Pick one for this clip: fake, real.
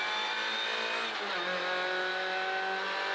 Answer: real